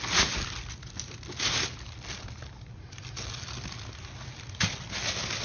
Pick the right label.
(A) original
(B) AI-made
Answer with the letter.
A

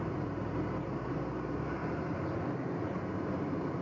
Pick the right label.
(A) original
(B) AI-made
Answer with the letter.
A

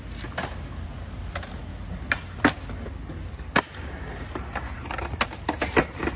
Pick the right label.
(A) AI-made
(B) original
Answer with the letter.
B